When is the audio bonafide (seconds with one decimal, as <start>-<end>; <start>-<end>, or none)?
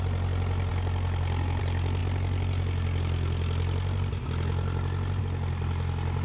0.0-6.2